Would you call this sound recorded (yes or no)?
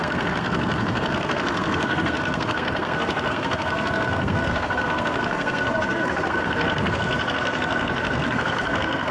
no